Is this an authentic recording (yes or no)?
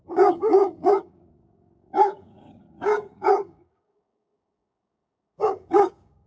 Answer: no